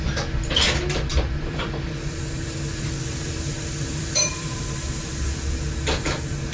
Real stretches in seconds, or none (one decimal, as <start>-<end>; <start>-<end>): 0.0-1.1; 4.6-6.5